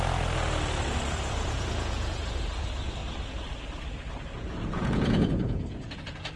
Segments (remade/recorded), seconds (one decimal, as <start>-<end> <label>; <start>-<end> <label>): 0.0-1.3 recorded; 1.3-3.0 remade; 3.0-4.4 recorded; 4.4-6.4 remade